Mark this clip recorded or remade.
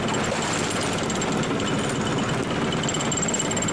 recorded